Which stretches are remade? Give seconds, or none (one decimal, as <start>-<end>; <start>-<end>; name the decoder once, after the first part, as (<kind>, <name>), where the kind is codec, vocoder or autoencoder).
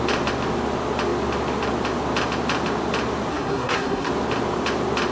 3.3-4.1 (codec, SNAC)